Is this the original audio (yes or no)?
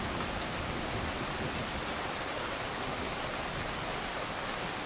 yes